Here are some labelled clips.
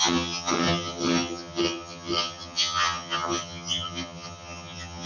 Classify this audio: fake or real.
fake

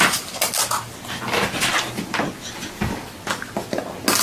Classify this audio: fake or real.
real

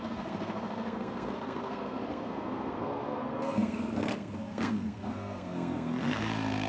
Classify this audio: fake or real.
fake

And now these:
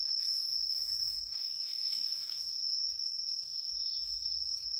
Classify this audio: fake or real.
fake